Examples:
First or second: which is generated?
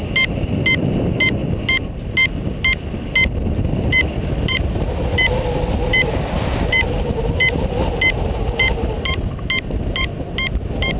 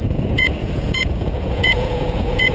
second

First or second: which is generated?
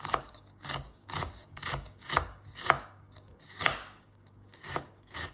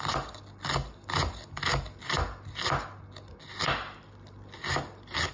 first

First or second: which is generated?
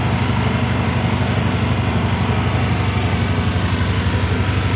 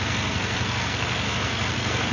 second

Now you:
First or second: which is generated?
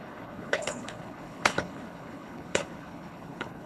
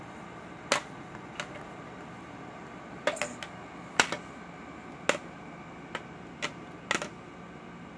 first